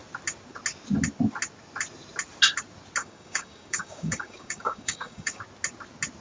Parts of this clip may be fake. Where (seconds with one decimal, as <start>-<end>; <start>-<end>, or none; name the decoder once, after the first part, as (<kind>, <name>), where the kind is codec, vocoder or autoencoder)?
3.0-5.4 (codec, DAC)